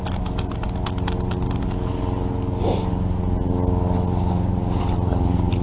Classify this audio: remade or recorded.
recorded